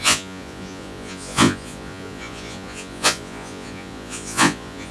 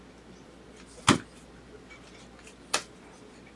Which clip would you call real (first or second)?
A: second